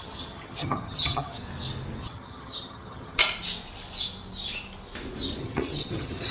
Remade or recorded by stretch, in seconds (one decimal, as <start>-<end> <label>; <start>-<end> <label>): 0.0-1.4 remade; 1.4-2.0 recorded; 2.0-3.2 remade; 3.2-5.4 recorded; 5.4-6.3 remade